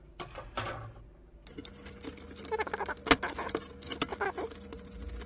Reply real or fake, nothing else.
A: real